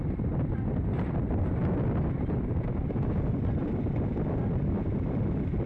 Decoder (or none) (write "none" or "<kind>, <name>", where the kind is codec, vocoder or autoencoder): none